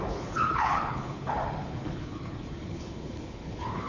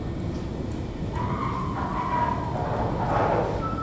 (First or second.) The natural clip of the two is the second